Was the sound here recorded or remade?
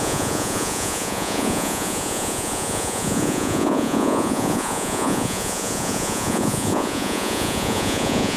remade